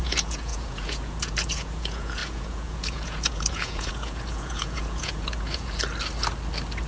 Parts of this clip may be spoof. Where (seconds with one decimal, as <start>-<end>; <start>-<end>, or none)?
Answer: 0.0-5.8